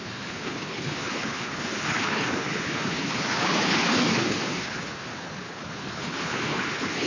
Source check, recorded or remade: remade